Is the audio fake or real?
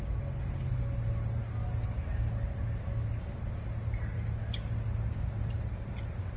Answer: real